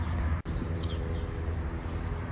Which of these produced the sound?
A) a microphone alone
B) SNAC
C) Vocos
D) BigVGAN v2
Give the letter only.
A